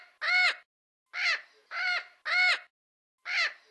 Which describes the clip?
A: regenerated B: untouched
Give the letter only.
B